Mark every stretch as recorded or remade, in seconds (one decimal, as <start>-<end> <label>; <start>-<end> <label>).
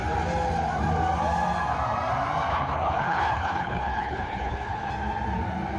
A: 0.0-2.5 recorded; 2.5-4.9 remade; 4.9-5.8 recorded